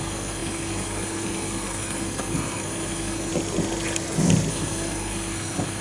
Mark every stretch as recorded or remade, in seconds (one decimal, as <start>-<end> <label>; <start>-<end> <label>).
0.0-3.3 remade; 3.3-4.5 recorded; 4.5-5.8 remade